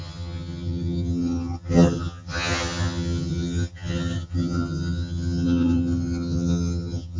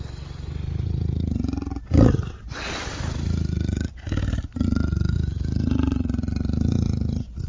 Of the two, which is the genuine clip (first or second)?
second